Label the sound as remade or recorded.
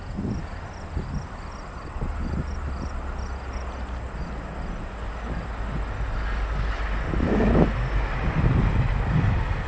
recorded